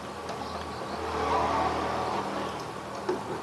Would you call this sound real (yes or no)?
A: yes